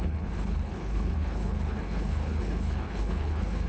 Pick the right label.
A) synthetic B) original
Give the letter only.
A